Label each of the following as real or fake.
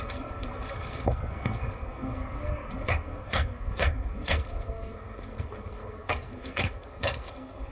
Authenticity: fake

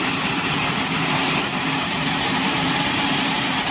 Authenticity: fake